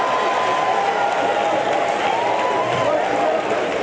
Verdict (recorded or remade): recorded